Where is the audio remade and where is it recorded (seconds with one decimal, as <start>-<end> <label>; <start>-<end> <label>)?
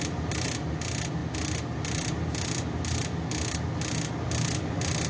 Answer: 0.0-5.1 recorded